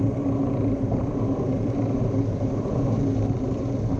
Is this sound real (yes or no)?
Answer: no